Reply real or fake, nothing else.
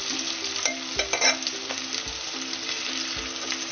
real